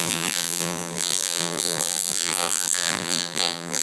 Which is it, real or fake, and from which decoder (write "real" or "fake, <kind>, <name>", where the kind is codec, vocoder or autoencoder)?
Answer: fake, vocoder, BigVGAN v2